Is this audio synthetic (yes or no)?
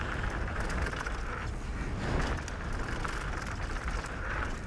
no